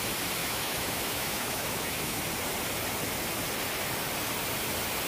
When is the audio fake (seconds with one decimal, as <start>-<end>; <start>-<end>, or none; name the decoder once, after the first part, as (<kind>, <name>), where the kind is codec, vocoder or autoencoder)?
0.4-2.2 (autoencoder, DAC-VAE)